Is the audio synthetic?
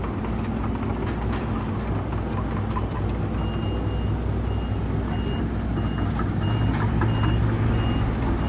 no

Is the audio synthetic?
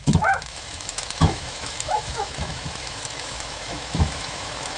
yes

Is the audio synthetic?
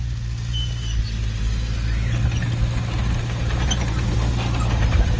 no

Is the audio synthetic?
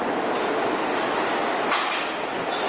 no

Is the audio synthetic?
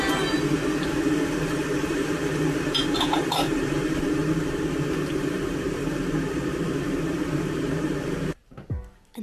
yes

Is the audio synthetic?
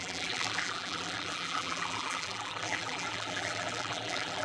yes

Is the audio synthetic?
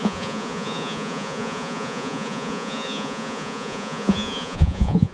yes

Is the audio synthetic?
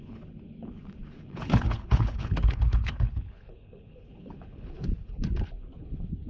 yes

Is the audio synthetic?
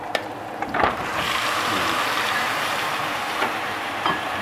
yes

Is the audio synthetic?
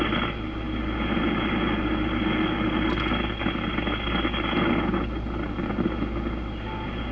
no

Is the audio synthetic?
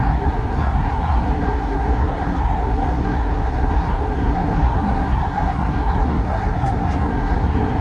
yes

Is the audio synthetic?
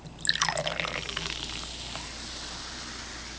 no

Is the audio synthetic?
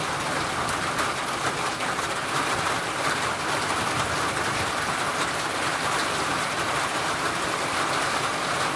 no